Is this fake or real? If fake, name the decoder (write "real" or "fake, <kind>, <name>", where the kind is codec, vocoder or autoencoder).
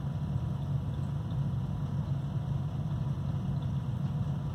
real